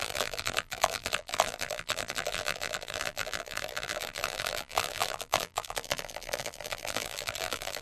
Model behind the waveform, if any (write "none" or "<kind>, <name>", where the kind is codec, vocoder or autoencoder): vocoder, BigVGAN v2